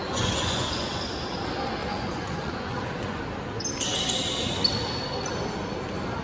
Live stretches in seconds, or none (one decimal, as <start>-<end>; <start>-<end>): 0.9-1.8; 3.2-6.2